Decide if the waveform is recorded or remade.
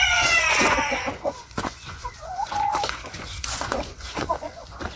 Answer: remade